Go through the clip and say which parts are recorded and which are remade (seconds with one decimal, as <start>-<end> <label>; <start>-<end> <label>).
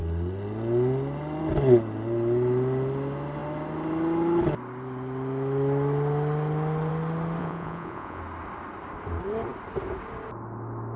0.0-7.4 recorded; 7.4-8.2 remade; 8.2-11.0 recorded